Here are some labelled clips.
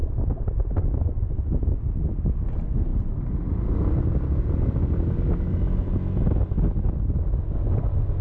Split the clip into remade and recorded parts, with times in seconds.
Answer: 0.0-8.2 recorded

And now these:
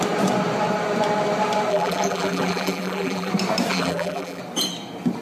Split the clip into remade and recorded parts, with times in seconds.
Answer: 0.0-1.7 recorded; 1.7-3.3 remade; 3.3-3.7 recorded; 3.7-4.4 remade; 4.4-5.2 recorded

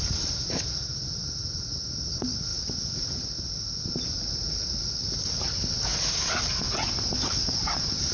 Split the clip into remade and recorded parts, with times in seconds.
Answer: 0.0-8.1 recorded